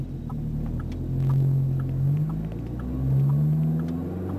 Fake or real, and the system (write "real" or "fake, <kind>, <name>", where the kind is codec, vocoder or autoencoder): real